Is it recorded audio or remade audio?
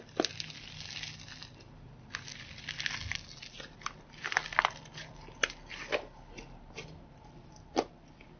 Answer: recorded